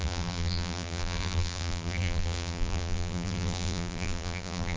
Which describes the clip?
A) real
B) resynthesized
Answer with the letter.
B